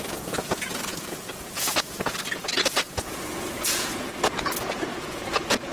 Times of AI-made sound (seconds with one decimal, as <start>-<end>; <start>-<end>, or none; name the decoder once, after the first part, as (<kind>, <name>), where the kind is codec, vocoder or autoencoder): 0.0-5.7 (vocoder, Vocos)